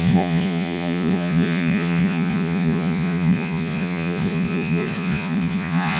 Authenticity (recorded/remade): remade